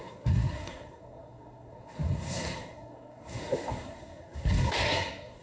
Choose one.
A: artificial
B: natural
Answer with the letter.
A